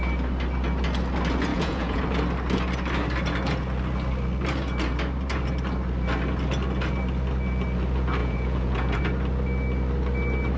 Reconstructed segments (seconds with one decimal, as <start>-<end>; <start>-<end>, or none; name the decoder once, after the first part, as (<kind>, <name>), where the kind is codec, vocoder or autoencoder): 1.5-2.0 (vocoder, Vocos); 8.2-9.0

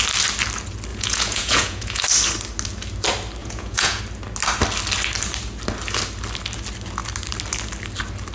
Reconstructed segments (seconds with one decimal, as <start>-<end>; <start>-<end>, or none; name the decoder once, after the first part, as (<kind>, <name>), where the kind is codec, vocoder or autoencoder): 0.9-2.0 (vocoder, Vocos); 3.4-4.0

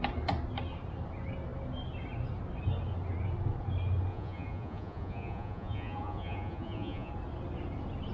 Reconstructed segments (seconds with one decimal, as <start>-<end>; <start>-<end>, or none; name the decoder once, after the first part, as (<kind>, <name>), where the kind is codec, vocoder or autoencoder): 4.1-7.1 (vocoder, Vocos)

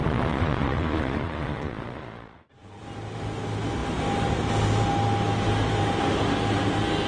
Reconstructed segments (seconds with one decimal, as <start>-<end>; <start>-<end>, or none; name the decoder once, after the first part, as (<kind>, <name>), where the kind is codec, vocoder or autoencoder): 0.0-2.8 (vocoder, Vocos)

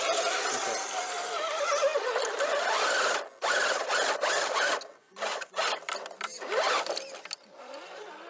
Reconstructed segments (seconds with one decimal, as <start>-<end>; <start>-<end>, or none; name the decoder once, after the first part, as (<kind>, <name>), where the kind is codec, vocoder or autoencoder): 5.0-5.7 (vocoder, Vocos)